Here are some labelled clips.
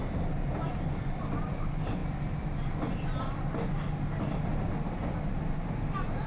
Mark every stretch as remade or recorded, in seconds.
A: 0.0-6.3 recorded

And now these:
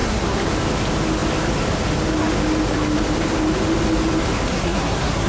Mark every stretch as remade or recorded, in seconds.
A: 0.0-0.5 remade; 0.5-4.5 recorded; 4.5-5.3 remade